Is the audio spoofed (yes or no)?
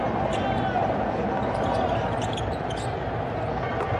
no